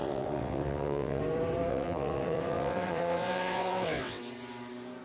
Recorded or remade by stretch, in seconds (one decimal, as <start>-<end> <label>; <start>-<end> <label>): 0.0-1.2 remade; 1.2-1.7 recorded; 1.7-4.2 remade; 4.2-5.0 recorded